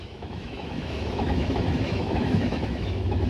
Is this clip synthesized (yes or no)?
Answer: yes